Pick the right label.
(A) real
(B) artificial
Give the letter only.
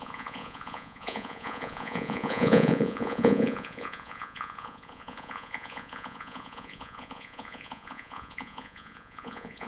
B